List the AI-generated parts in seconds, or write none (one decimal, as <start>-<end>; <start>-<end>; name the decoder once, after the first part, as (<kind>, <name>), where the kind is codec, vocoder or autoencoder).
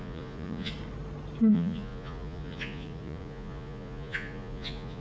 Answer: 0.0-0.7 (vocoder, Vocos); 1.5-5.0